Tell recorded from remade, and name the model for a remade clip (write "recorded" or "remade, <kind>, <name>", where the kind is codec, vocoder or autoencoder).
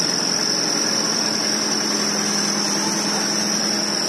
recorded